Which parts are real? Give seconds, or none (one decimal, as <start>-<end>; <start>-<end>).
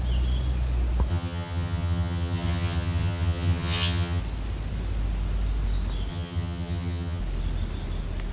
0.0-1.1; 4.2-6.1; 7.2-8.3